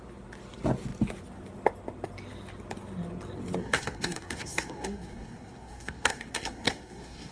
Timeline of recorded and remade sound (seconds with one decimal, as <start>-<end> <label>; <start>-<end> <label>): 0.0-3.6 recorded; 3.6-7.3 remade